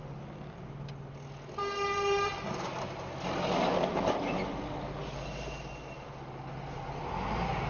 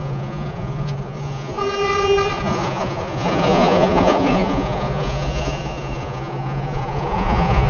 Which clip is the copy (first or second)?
second